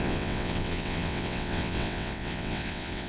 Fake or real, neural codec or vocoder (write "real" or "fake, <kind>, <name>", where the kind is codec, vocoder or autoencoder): fake, vocoder, WaveNeXt